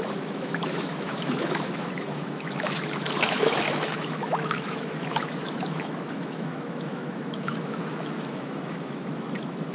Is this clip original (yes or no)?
no